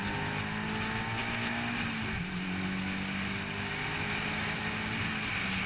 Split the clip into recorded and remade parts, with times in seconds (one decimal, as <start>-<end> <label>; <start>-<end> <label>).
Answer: 0.0-5.7 recorded